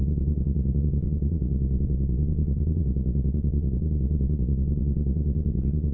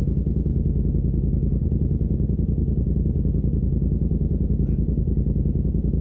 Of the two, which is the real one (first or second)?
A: second